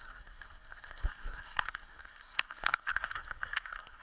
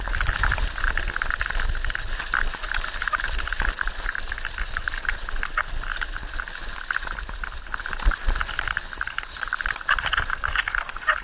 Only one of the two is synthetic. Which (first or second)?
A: first